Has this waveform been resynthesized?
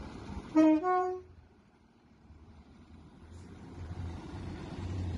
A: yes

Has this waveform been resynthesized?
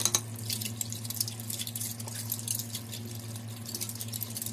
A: no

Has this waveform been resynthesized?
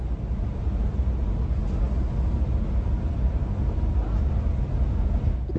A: no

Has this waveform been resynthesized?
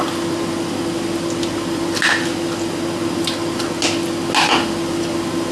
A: no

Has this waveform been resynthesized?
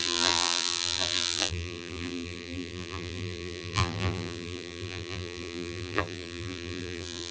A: yes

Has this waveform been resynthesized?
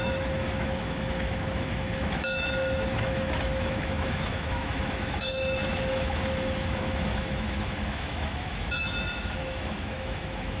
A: yes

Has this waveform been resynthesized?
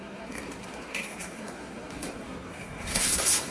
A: yes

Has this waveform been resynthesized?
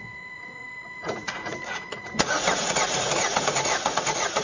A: yes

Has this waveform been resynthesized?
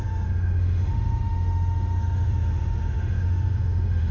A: yes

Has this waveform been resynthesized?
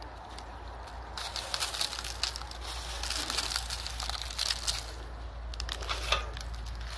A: no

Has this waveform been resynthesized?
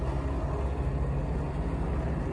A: no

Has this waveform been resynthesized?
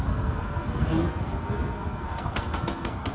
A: yes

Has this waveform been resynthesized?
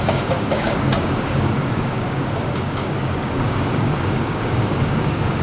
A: yes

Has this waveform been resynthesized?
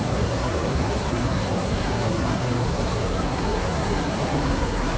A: yes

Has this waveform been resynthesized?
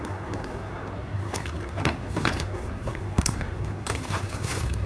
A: yes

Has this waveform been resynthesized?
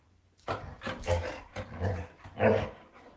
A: yes